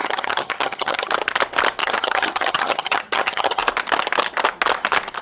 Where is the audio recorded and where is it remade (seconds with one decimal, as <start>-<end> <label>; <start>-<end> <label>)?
0.0-1.1 remade; 1.1-1.8 recorded; 1.8-3.6 remade; 3.6-5.2 recorded